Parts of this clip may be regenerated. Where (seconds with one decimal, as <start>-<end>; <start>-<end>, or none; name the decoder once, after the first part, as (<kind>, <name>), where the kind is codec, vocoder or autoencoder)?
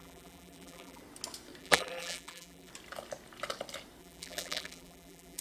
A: 0.0-1.0 (vocoder, BigVGAN v2); 1.6-2.7; 4.0-5.4